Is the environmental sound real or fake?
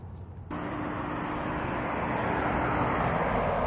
real